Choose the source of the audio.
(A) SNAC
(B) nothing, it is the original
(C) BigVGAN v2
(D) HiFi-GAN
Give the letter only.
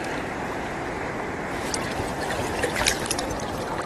C